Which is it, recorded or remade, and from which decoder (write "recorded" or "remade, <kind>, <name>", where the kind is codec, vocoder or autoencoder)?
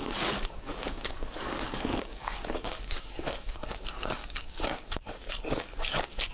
remade, codec, DAC